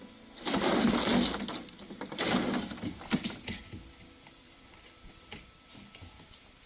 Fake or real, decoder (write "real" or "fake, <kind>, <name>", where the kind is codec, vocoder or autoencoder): real